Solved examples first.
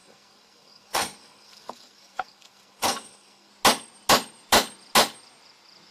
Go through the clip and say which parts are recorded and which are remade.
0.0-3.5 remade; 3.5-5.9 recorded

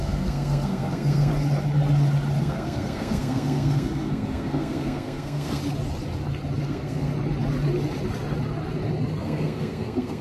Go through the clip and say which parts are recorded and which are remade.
0.0-1.3 remade; 1.3-2.4 recorded; 2.4-5.6 remade; 5.6-6.6 recorded; 6.6-7.1 remade; 7.1-9.2 recorded; 9.2-10.2 remade

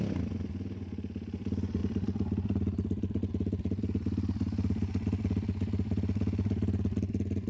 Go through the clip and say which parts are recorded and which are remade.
0.0-7.5 recorded